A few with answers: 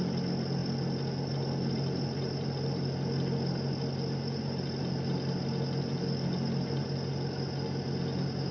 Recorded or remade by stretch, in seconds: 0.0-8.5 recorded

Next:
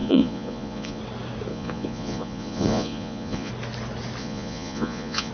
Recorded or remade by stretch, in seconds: 0.0-1.0 remade; 1.0-1.5 recorded; 1.5-3.5 remade; 3.5-4.2 recorded; 4.2-5.3 remade